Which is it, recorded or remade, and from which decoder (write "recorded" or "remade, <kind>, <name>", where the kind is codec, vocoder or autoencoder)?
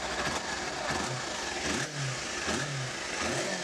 recorded